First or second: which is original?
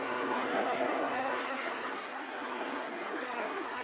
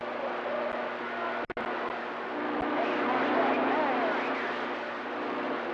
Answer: second